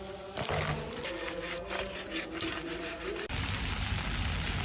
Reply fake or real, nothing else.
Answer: real